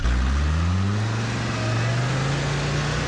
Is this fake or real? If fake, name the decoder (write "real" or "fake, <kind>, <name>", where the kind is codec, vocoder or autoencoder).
real